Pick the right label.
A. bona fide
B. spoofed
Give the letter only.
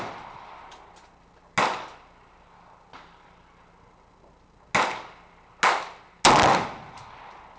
A